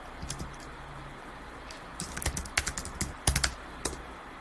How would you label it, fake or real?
real